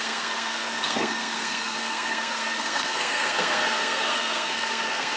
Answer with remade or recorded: remade